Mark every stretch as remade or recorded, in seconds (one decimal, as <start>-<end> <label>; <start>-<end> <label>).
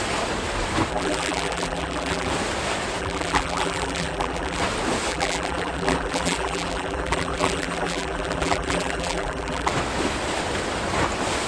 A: 0.0-0.9 recorded; 0.9-2.3 remade; 2.3-3.0 recorded; 3.0-4.6 remade; 4.6-5.1 recorded; 5.1-9.7 remade; 9.7-11.5 recorded